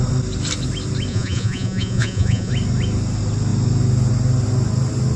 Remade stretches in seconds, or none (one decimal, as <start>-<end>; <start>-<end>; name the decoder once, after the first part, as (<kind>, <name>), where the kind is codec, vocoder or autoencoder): 1.1-2.5 (vocoder, Vocos)